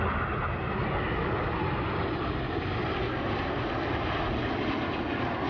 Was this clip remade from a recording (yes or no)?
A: no